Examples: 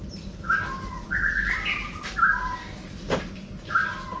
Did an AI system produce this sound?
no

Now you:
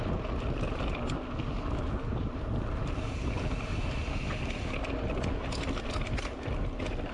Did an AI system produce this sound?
no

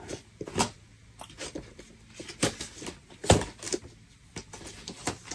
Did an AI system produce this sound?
no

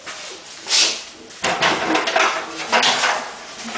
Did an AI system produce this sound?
no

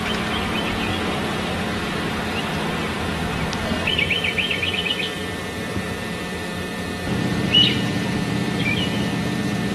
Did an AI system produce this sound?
yes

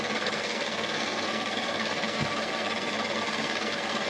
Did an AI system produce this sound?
yes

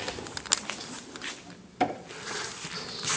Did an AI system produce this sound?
no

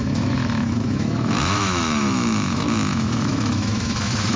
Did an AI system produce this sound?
yes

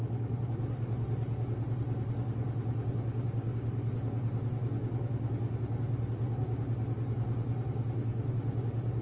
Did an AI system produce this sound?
no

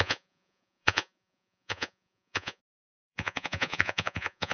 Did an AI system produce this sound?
yes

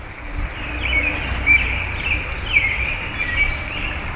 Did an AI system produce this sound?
yes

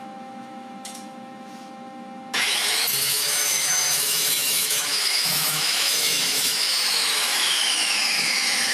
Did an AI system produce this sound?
yes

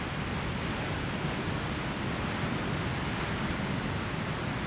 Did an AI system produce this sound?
no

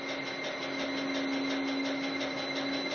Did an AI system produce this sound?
no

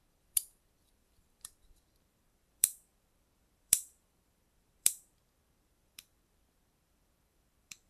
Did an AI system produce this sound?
yes